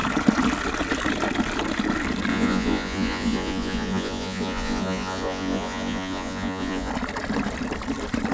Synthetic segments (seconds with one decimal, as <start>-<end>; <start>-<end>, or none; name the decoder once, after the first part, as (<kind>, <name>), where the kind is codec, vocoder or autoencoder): 2.3-6.9 (vocoder, Vocos)